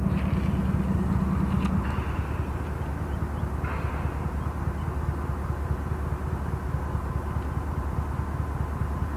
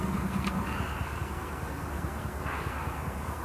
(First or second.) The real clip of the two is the first